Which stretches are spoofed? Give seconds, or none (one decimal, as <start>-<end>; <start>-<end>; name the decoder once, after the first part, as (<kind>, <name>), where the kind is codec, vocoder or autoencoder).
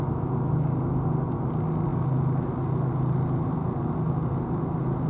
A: none